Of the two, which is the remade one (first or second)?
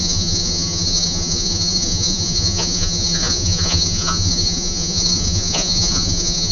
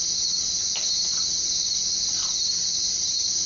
first